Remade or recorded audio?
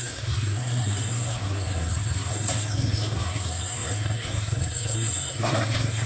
remade